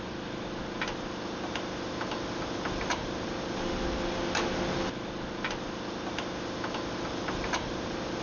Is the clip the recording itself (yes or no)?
yes